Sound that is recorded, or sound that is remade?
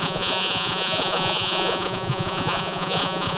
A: remade